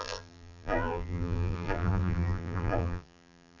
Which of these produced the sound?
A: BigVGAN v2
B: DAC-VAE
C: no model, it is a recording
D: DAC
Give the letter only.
A